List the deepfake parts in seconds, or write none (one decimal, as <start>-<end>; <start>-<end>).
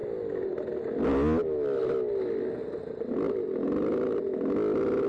none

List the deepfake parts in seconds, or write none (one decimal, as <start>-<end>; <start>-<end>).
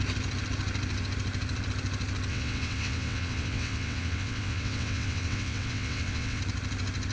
2.3-6.4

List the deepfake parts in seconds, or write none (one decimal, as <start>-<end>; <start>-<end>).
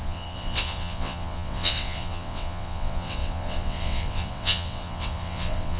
0.0-5.8